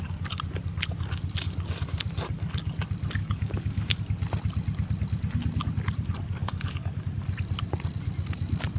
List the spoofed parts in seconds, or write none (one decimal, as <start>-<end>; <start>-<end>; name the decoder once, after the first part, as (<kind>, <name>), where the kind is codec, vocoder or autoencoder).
3.2-4.0 (codec, DAC); 6.4-7.0

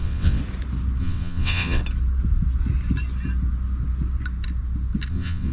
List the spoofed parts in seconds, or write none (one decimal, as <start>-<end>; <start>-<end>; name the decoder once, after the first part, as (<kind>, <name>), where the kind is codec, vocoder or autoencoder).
0.0-0.4 (vocoder, WaveNeXt); 1.0-1.8; 5.1-5.5

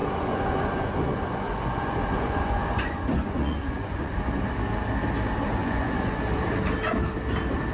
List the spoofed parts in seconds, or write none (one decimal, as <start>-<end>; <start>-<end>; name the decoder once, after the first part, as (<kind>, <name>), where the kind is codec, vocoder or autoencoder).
0.0-4.3 (vocoder, Vocos); 5.6-6.2